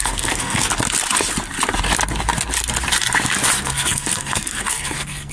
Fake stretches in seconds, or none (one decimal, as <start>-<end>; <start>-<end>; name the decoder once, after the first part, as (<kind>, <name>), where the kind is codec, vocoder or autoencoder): 0.0-0.7 (codec, SNAC); 3.6-5.3